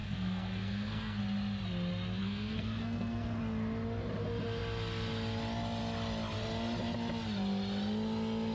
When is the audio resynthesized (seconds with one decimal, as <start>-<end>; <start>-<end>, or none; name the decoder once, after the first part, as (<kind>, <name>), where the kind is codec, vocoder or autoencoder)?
0.0-1.2 (codec, SNAC); 2.2-3.4